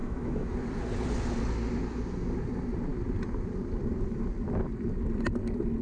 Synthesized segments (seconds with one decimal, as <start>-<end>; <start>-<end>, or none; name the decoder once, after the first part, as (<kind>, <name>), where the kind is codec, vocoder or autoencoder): 0.0-0.5 (autoencoder, DAC-VAE)